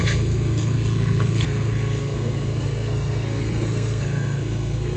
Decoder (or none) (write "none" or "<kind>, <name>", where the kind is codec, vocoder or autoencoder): codec, SNAC